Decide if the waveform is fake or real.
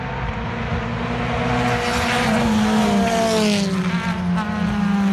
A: real